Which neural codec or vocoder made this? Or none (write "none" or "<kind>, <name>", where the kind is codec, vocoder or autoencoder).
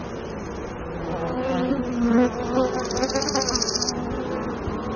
none